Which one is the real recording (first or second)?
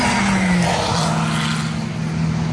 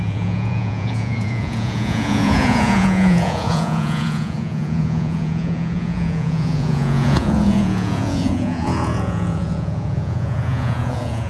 first